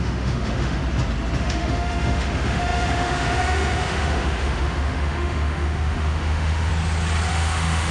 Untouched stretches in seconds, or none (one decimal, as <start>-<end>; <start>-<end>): 0.8-1.4; 6.7-7.3